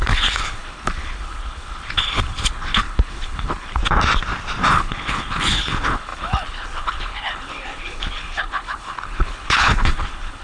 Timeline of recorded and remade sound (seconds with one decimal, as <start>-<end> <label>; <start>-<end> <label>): 0.0-3.8 remade; 3.8-4.7 recorded; 4.7-10.4 remade